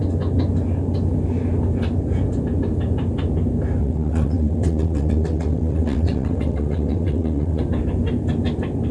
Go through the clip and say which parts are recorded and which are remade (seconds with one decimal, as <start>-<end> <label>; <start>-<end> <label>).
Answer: 0.0-3.8 recorded; 3.8-7.6 remade; 7.6-8.9 recorded